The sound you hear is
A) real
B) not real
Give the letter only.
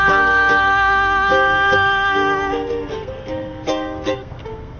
B